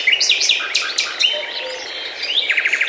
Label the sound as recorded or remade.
recorded